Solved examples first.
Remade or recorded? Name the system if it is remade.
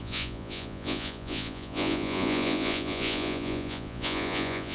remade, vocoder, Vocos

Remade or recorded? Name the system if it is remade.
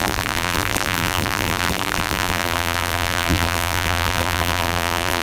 remade, vocoder, BigVGAN v2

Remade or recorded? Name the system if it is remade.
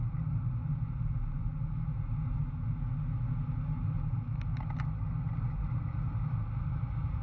recorded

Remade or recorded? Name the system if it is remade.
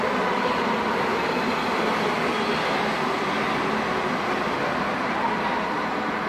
recorded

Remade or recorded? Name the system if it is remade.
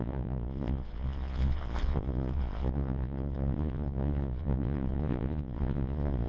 remade, vocoder, Vocos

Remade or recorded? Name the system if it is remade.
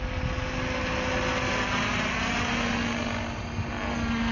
recorded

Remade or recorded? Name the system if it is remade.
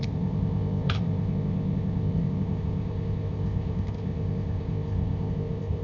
remade, codec, ZipCodec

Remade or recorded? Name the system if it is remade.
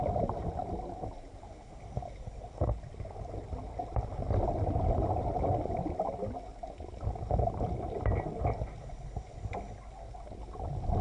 recorded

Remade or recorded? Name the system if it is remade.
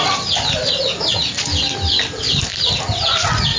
recorded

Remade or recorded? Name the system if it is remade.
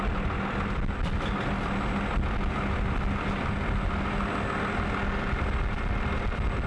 recorded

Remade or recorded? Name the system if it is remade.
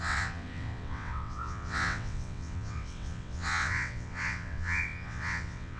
remade, vocoder, WaveNeXt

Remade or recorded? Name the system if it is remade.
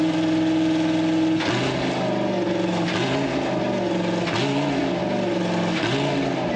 recorded